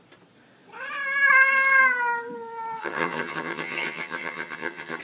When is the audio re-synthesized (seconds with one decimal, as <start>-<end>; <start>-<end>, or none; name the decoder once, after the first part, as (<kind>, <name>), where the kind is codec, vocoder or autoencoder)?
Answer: 2.8-5.0 (vocoder, HiFi-GAN)